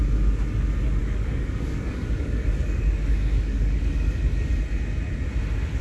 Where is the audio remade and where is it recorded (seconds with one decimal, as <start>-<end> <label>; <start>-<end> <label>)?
0.0-1.0 recorded; 1.0-4.5 remade; 4.5-5.8 recorded